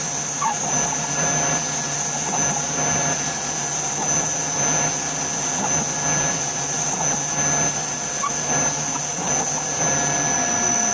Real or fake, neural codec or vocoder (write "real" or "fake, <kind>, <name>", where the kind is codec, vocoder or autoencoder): real